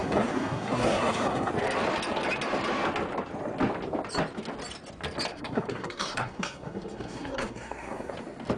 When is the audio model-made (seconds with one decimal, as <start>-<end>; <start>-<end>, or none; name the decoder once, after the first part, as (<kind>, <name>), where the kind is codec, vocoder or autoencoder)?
0.0-1.5 (codec, SNAC); 5.3-8.1